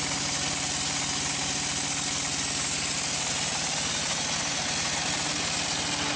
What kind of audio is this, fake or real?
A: real